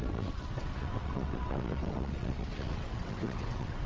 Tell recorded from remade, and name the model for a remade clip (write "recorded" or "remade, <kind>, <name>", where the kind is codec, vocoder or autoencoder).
remade, vocoder, WaveNeXt